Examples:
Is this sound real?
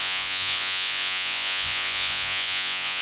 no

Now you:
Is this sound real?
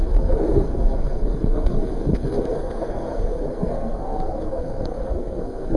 no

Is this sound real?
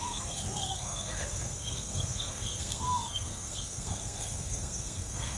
no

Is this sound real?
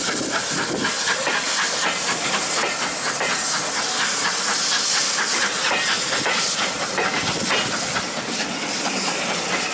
yes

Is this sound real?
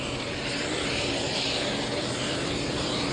yes